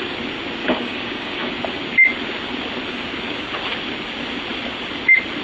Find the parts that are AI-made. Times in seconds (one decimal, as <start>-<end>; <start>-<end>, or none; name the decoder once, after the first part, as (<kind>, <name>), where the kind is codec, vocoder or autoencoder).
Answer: 0.6-1.5 (codec, DAC)